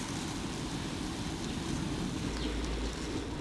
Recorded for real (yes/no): yes